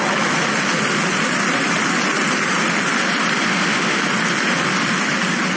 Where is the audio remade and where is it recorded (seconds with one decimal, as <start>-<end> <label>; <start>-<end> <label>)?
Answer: 0.0-3.5 recorded; 3.5-4.0 remade; 4.0-5.6 recorded